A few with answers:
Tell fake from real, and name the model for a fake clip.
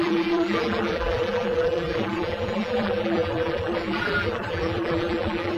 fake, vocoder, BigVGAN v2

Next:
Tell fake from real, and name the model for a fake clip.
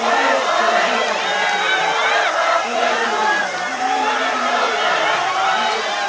fake, vocoder, BigVGAN v2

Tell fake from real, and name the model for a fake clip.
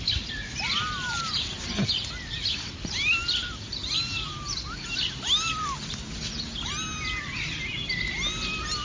real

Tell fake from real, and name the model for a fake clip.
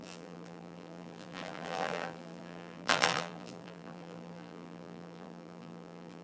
fake, vocoder, BigVGAN v2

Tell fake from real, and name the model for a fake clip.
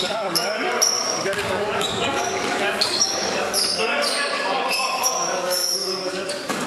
fake, codec, DAC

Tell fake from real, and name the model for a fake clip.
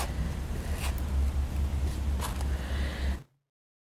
real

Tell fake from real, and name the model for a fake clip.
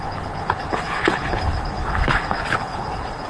fake, codec, HILCodec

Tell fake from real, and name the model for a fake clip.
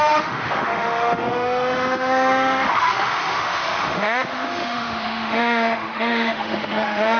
fake, autoencoder, DAC-VAE